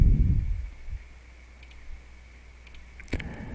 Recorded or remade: recorded